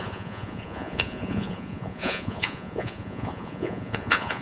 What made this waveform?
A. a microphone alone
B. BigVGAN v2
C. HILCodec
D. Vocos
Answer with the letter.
D